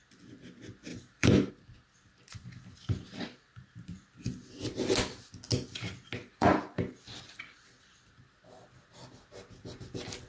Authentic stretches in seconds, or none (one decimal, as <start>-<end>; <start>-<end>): 0.0-0.9; 1.5-6.2; 7.1-10.3